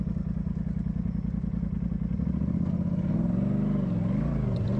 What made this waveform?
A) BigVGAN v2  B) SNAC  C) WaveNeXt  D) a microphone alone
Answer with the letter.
D